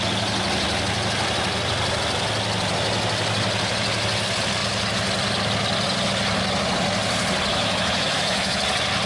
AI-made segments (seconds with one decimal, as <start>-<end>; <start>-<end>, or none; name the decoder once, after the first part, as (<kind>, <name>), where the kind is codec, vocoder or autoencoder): 7.5-8.6 (autoencoder, DAC-VAE)